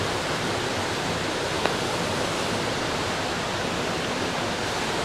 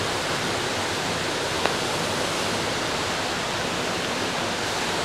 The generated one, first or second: first